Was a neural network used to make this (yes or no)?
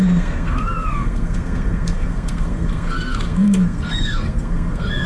yes